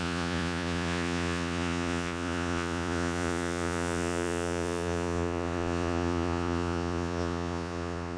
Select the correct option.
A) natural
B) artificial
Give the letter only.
B